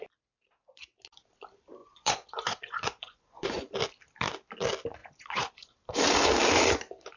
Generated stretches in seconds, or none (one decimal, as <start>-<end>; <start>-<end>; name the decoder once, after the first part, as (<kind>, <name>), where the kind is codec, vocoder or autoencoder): 1.8-3.6 (vocoder, Vocos); 5.0-5.7